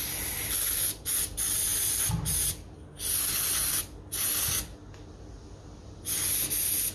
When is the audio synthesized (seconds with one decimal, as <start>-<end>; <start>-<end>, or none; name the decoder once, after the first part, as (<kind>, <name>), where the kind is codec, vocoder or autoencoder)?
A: none